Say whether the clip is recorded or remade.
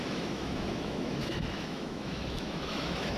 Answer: remade